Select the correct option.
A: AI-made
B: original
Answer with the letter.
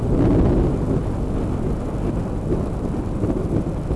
B